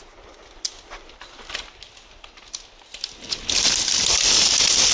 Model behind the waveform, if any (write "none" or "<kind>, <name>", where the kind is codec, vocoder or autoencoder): none